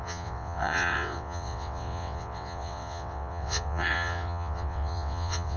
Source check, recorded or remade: remade